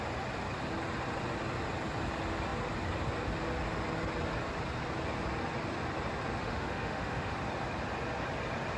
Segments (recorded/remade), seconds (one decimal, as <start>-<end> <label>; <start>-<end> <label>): 0.0-6.4 recorded; 6.4-7.3 remade; 7.3-8.8 recorded